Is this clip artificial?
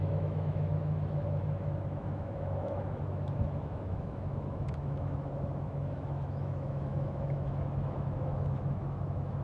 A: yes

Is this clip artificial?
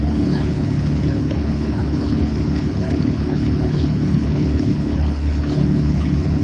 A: yes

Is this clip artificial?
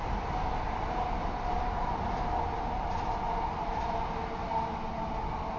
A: no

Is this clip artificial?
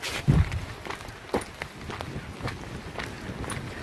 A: no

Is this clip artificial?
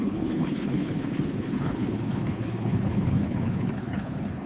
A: yes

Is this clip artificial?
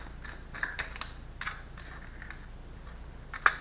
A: no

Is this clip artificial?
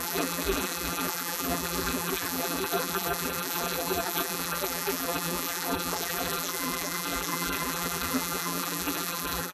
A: yes